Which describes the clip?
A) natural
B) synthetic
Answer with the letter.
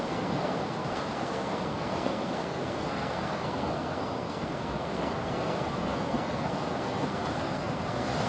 B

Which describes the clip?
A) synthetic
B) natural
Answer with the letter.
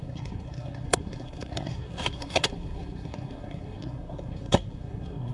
A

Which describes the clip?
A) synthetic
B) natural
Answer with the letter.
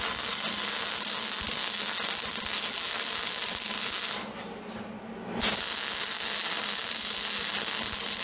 B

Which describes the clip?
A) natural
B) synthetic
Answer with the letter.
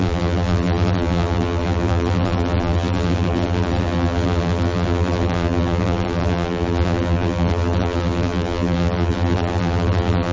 B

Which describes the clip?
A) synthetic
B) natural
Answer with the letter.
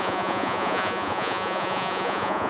A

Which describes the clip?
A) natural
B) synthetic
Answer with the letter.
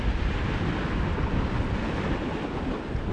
A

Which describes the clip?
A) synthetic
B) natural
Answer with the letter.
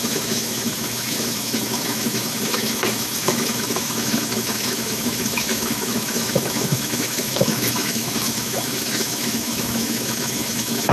A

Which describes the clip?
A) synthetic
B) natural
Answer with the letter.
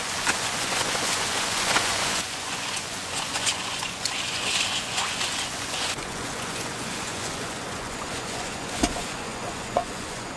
A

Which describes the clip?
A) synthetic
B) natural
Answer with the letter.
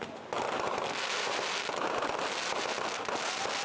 B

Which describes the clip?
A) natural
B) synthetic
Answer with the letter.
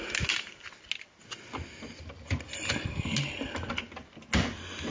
A